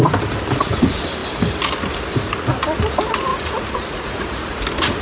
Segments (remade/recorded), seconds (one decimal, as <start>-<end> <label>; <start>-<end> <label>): 0.0-3.3 recorded; 3.3-4.6 remade; 4.6-5.0 recorded